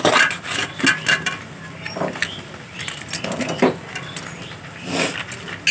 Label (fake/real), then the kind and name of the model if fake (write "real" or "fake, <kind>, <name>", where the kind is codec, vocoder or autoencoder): real